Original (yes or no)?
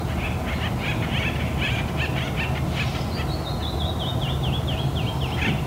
yes